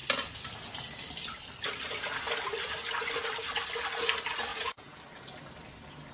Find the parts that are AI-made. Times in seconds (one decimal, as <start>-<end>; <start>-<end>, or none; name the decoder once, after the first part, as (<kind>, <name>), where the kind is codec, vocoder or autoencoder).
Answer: 4.5-5.0 (vocoder, Vocos)